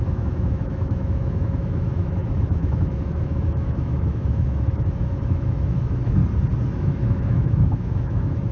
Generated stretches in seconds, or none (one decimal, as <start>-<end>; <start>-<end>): 0.0-6.2; 6.8-8.5